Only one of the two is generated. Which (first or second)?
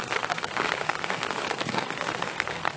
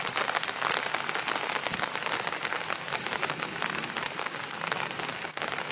first